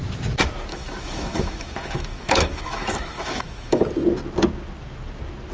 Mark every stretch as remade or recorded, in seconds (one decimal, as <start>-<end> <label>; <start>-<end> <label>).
0.0-0.7 recorded; 0.7-3.8 remade; 3.8-5.5 recorded